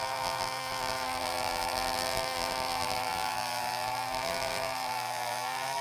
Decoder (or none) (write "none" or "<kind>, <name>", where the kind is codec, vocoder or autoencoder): vocoder, BigVGAN v2